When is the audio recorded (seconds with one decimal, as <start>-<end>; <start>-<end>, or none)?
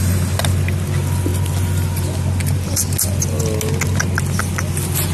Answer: 0.0-5.1